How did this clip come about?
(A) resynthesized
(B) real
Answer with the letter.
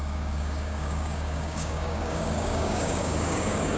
A